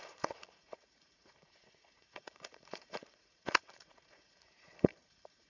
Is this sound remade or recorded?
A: remade